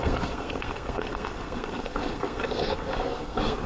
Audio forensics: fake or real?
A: fake